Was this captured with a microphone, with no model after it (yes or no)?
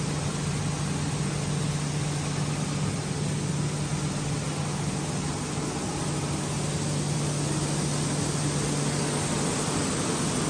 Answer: yes